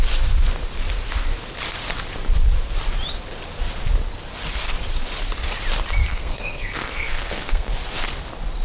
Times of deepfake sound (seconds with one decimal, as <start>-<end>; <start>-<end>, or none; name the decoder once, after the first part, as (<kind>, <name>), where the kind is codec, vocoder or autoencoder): 6.1-7.7 (codec, SNAC)